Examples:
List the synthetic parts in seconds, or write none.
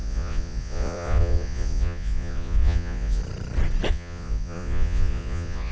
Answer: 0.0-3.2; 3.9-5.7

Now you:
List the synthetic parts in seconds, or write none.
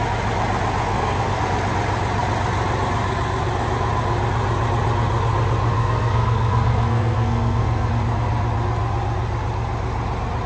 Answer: 0.9-1.4; 5.7-7.9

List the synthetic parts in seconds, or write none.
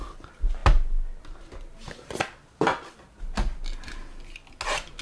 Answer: none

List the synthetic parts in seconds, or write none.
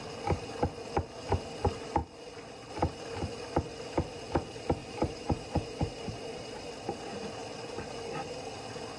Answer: 4.8-6.7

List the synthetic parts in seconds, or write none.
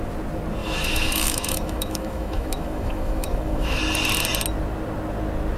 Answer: 0.6-3.8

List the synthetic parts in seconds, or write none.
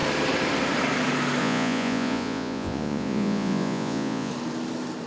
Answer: 1.4-4.3